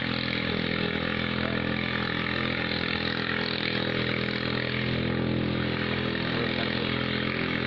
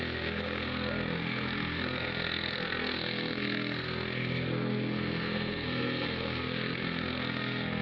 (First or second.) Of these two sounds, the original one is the first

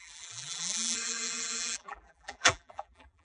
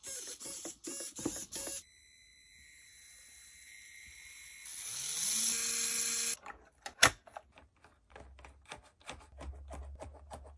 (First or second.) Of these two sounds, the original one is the second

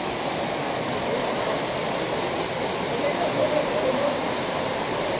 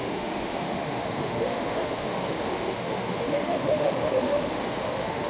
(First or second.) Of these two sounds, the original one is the first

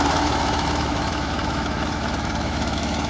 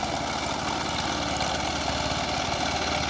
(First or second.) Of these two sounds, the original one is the second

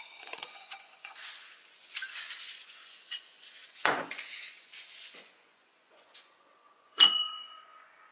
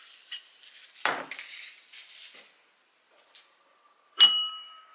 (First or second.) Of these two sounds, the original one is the second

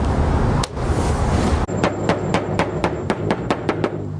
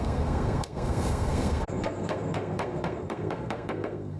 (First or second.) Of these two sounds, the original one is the first